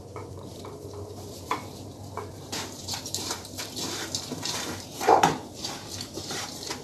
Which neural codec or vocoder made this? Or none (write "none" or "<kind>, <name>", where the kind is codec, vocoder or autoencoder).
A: vocoder, BigVGAN v2